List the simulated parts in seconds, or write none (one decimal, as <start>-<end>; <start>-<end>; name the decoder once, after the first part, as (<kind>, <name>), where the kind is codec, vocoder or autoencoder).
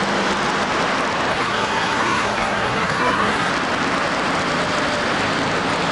1.3-3.5 (codec, SNAC)